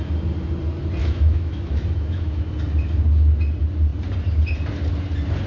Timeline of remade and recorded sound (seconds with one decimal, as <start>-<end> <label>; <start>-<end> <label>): 0.0-1.0 recorded; 1.0-2.5 remade; 2.5-5.5 recorded